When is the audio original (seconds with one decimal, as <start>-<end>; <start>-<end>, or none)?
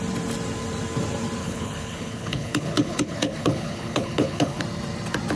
0.0-1.4; 4.6-5.4